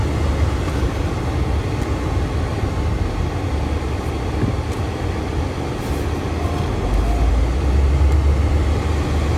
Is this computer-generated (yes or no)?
no